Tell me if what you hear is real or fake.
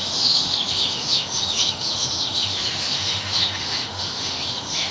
fake